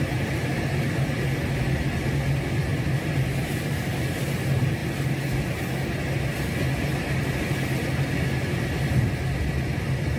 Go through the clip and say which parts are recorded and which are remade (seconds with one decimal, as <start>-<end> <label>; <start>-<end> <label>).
0.0-10.2 recorded